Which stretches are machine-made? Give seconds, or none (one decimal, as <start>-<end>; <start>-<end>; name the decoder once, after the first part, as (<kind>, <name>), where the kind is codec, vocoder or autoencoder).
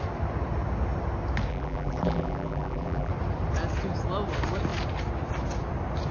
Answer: 1.5-3.1 (vocoder, BigVGAN v2)